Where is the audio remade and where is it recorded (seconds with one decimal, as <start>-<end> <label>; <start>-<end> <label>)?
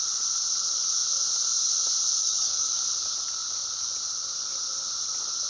0.0-2.2 recorded; 2.2-2.8 remade; 2.8-5.5 recorded